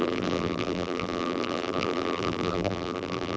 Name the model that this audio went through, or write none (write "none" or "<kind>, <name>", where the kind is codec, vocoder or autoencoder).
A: vocoder, BigVGAN v2